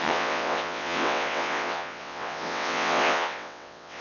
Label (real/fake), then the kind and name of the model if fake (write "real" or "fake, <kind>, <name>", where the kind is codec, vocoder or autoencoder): fake, vocoder, WaveNeXt